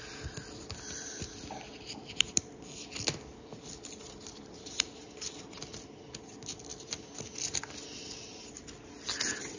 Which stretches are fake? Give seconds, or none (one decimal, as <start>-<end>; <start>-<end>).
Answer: none